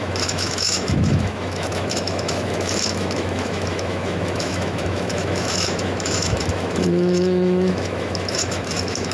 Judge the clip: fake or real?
fake